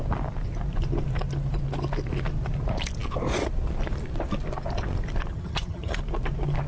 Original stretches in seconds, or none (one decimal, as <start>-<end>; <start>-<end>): 0.0-5.3; 6.0-6.7